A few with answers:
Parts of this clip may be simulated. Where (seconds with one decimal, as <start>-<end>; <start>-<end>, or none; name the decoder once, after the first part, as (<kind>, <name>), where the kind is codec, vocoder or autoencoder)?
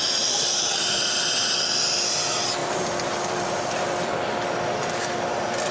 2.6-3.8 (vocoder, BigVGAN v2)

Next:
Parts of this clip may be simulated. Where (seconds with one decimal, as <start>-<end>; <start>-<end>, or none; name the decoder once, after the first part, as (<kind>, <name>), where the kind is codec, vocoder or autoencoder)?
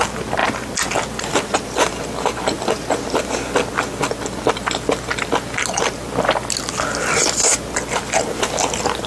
none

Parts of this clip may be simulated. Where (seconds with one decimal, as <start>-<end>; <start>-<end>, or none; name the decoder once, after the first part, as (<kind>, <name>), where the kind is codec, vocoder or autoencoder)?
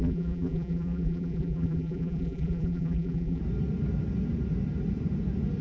0.0-3.4 (vocoder, BigVGAN v2)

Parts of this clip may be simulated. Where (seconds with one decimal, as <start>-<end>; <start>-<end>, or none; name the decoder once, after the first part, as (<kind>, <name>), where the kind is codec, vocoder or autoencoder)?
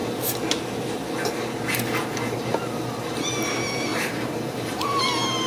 3.9-5.0 (vocoder, BigVGAN v2)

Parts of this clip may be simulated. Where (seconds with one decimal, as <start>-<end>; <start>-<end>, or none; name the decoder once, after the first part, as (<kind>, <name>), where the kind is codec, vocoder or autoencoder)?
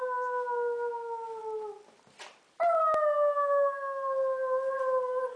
none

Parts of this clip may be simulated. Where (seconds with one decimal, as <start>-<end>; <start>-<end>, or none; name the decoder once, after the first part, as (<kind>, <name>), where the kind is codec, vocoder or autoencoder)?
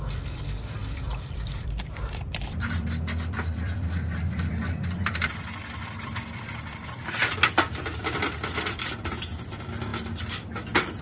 0.0-7.2 (vocoder, BigVGAN v2); 8.0-9.9